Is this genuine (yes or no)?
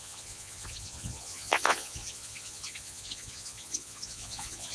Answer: no